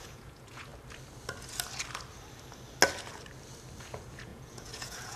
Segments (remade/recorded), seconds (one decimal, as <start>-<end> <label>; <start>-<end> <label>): 0.0-0.7 remade; 0.7-3.8 recorded; 3.8-5.2 remade

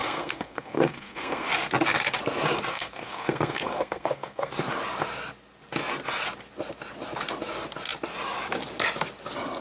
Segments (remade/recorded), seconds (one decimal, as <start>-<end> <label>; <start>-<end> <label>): 0.0-1.5 remade; 1.5-2.7 recorded; 2.7-4.5 remade; 4.5-9.6 recorded